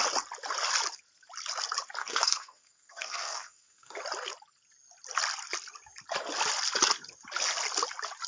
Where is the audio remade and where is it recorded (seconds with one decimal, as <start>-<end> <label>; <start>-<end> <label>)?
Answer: 0.0-2.0 recorded; 2.0-4.0 remade; 4.0-8.3 recorded